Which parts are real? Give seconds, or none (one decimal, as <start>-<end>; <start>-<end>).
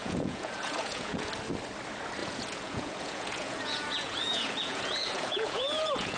1.3-2.2